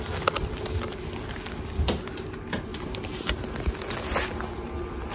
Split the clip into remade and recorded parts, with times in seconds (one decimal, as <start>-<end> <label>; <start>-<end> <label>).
0.0-2.7 recorded; 2.7-3.4 remade; 3.4-5.1 recorded